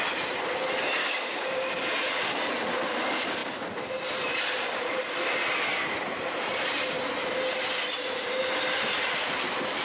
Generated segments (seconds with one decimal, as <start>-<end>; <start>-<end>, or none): 1.0-1.7